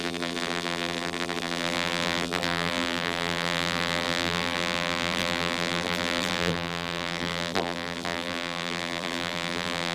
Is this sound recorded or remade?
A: remade